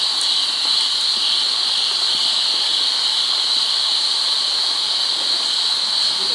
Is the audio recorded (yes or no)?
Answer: yes